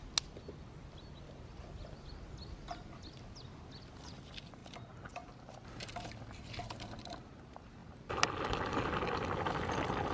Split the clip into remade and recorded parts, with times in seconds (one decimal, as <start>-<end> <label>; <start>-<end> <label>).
0.0-10.1 recorded